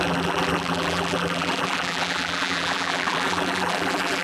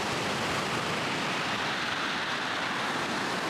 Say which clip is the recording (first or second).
second